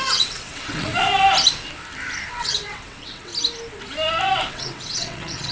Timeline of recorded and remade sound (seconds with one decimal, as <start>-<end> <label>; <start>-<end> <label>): 0.0-0.9 remade; 0.9-2.3 recorded; 2.3-3.3 remade; 3.3-4.5 recorded; 4.5-5.5 remade